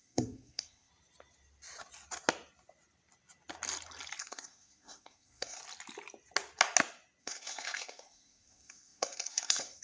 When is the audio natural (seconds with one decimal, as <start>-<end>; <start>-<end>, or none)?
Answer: 0.9-4.2; 5.6-7.2